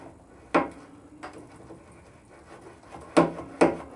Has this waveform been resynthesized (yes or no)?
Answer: no